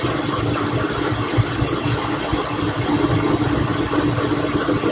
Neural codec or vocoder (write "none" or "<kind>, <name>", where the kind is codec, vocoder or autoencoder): none